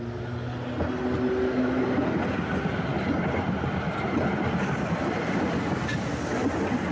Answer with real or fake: real